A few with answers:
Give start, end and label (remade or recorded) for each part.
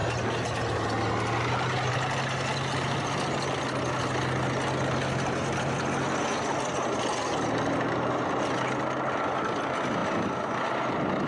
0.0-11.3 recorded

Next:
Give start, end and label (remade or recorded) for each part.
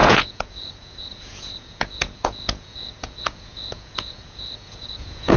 0.0-5.4 remade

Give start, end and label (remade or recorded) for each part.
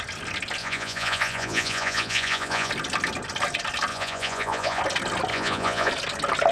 0.0-0.6 recorded; 0.6-2.7 remade; 2.7-3.9 recorded; 3.9-4.8 remade; 4.8-5.3 recorded; 5.3-5.9 remade; 5.9-6.5 recorded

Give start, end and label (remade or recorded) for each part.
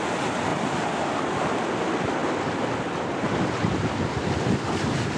0.0-5.2 recorded